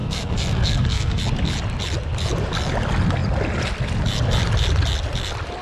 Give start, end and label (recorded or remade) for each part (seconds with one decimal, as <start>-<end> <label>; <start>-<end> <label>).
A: 0.0-1.2 remade; 1.2-5.6 recorded